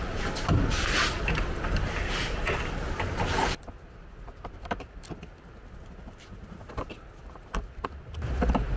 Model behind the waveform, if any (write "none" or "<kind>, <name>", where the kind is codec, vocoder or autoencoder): none